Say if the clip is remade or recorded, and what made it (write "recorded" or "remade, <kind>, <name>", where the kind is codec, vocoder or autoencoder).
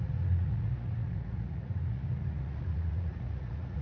remade, vocoder, Vocos